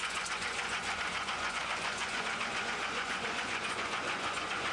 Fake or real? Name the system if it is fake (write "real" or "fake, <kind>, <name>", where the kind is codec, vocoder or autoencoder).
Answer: fake, vocoder, Vocos